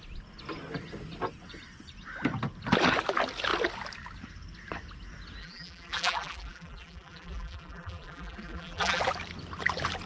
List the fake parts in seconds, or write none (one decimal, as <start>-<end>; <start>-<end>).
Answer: 5.4-9.0